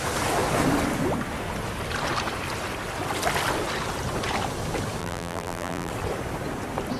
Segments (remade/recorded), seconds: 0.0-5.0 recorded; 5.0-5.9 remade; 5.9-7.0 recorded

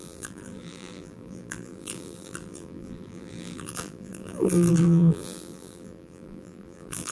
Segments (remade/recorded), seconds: 0.0-7.1 remade

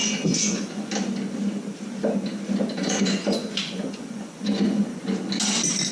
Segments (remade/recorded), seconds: 0.0-0.9 remade; 0.9-2.8 recorded; 2.8-5.0 remade; 5.0-5.9 recorded

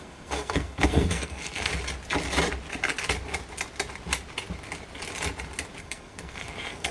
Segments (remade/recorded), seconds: 0.0-1.7 remade; 1.7-5.8 recorded; 5.8-6.9 remade

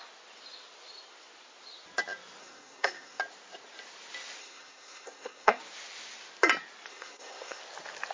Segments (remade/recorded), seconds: 0.0-2.4 recorded; 2.4-3.2 remade; 3.2-4.4 recorded; 4.4-5.6 remade; 5.6-6.9 recorded; 6.9-7.6 remade; 7.6-8.1 recorded

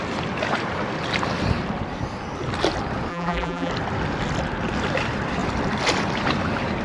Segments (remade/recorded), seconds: 0.0-3.1 recorded; 3.1-3.7 remade; 3.7-6.8 recorded